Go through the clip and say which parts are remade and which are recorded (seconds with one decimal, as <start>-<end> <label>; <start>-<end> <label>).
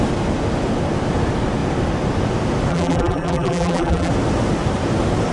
0.0-2.7 recorded; 2.7-4.1 remade; 4.1-5.3 recorded